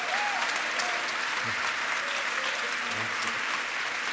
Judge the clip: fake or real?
real